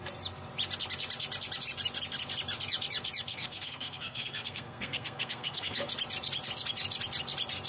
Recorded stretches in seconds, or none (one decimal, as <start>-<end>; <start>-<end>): 0.0-3.3; 5.9-7.7